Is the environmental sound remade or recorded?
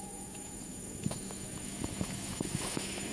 remade